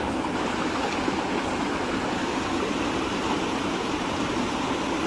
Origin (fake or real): real